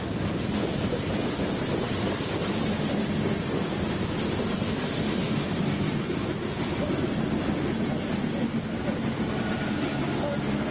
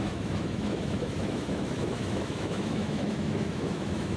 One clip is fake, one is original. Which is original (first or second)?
first